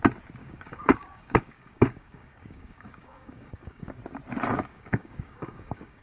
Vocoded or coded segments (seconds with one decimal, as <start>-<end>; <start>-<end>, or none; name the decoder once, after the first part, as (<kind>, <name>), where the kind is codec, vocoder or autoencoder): 0.4-4.0 (codec, DAC); 4.7-6.0